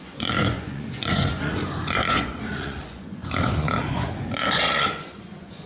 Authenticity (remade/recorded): remade